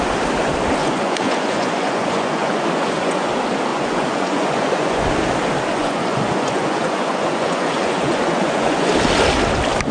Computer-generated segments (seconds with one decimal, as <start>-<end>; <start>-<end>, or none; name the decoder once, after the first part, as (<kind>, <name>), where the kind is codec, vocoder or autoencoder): 0.8-3.3 (vocoder, Vocos); 3.7-5.1; 5.7-8.9